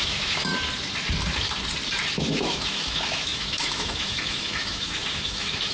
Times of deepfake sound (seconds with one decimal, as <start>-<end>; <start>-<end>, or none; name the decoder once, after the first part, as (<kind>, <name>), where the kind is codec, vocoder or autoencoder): 0.0-0.5 (autoencoder, DAC-VAE); 2.2-5.7